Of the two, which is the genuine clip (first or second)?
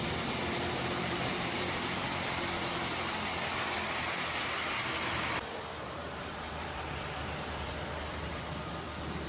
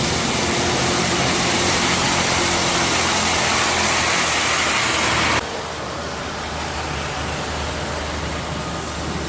second